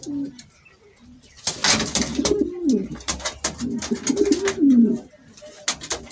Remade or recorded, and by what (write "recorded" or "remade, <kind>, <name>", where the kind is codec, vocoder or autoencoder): recorded